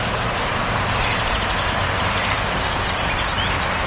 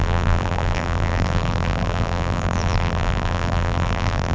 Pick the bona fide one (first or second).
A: first